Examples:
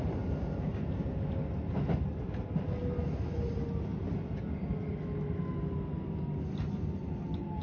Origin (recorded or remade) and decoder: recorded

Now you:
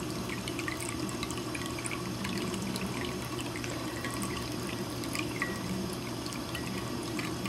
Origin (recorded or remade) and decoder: remade, vocoder, BigVGAN v2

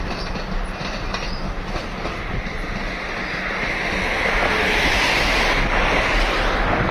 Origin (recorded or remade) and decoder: recorded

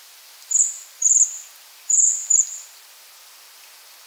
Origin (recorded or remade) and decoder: recorded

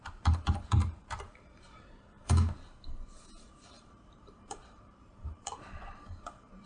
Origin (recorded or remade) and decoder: remade, vocoder, BigVGAN v2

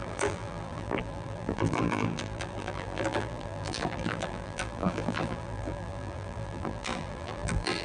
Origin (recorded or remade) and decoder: remade, vocoder, BigVGAN v2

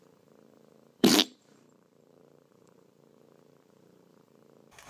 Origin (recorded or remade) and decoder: remade, vocoder, BigVGAN v2